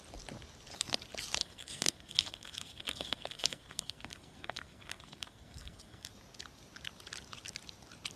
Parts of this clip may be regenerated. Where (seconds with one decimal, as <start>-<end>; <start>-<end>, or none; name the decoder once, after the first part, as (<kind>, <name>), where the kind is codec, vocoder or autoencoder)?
1.4-6.1 (codec, SNAC)